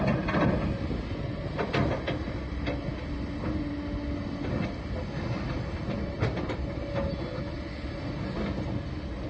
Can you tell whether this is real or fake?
real